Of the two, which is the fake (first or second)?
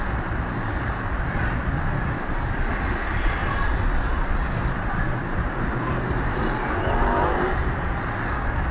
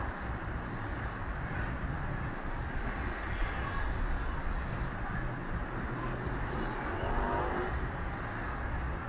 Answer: first